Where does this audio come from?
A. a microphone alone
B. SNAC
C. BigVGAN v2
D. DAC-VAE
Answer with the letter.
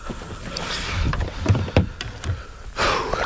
C